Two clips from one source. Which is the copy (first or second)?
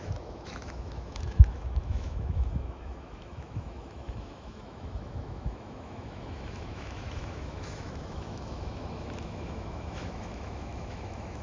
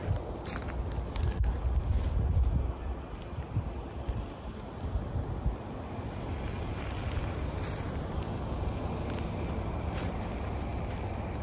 first